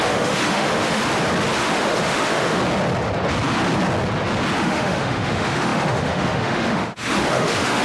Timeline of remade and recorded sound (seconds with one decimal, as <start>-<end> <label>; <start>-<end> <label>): 0.0-1.0 remade; 1.0-1.6 recorded; 1.6-2.6 remade; 2.6-4.6 recorded; 4.6-7.8 remade